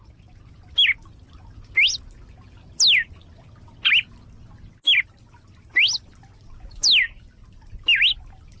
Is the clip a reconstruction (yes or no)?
no